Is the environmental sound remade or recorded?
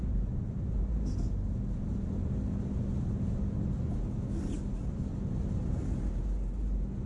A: recorded